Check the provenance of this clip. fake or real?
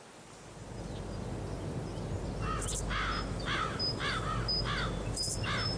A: real